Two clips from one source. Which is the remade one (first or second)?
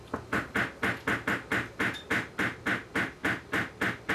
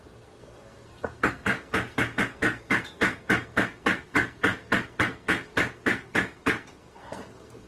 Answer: second